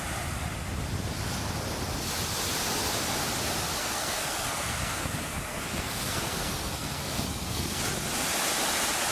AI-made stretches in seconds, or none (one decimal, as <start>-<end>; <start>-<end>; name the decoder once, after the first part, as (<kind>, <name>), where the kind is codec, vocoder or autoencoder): 3.8-7.8 (codec, SNAC)